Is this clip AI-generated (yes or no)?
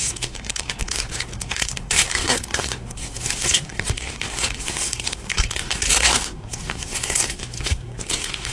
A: yes